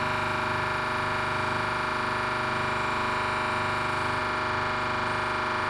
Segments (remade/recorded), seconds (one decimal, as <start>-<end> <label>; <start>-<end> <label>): 0.0-5.7 recorded